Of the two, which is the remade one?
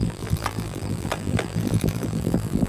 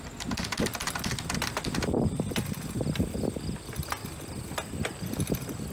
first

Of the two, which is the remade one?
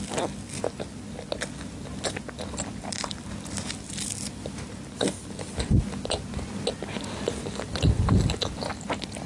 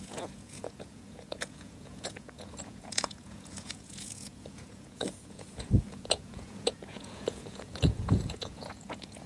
second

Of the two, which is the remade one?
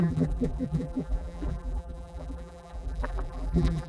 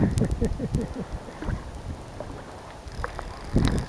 first